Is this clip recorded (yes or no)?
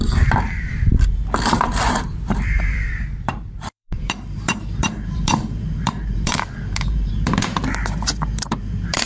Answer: no